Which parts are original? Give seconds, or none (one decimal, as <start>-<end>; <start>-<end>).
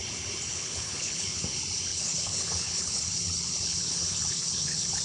0.0-0.5; 1.4-1.9